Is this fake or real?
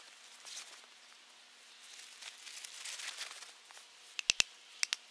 real